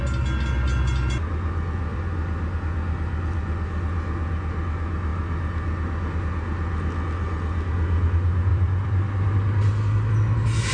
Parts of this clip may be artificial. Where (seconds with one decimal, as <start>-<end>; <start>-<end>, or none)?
1.9-2.6; 8.5-10.1